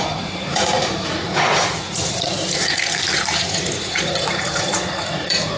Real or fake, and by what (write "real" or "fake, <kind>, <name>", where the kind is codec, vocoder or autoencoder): fake, vocoder, Vocos